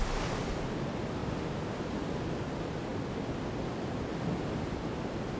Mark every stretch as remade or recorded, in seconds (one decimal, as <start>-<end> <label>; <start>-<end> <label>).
0.0-5.4 recorded